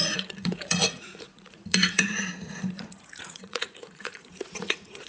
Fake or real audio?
fake